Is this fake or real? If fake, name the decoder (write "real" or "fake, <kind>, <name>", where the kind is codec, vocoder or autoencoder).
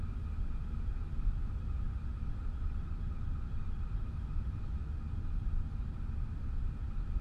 real